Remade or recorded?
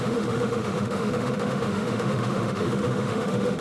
remade